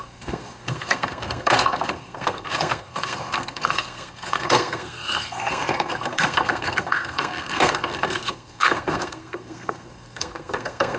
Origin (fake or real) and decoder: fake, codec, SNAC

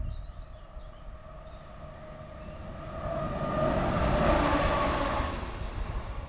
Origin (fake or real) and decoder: real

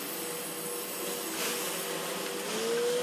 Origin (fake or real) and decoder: real